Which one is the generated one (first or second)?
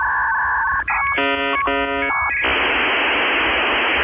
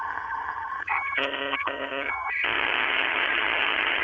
second